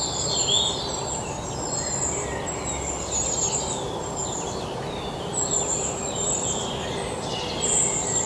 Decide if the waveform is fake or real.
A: real